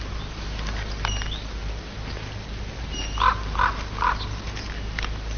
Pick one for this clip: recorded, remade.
recorded